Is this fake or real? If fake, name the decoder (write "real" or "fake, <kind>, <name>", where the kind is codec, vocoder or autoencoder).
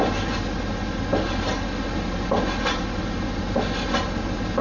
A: real